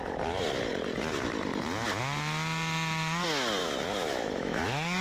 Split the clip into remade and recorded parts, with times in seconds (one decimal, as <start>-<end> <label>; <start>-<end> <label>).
0.0-3.6 recorded; 3.6-5.0 remade